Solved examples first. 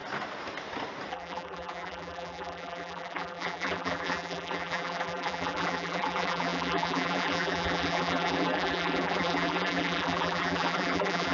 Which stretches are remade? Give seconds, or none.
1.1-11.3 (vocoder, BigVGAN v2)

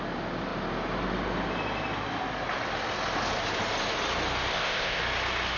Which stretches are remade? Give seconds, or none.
4.5-5.0 (codec, ZipCodec)

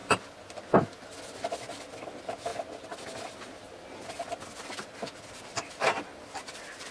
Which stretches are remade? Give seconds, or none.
0.0-2.5 (vocoder, BigVGAN v2); 3.5-6.9